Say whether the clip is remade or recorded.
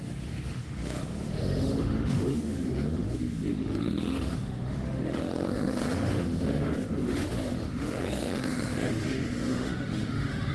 remade